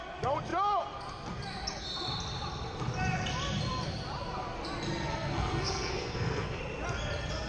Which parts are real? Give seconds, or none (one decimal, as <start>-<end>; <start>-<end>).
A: 0.0-5.1; 6.6-7.5